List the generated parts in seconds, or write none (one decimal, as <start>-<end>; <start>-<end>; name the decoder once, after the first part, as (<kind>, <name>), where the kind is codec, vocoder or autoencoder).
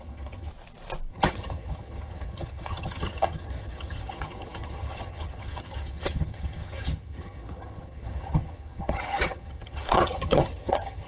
0.0-0.5 (vocoder, HiFi-GAN); 1.1-11.1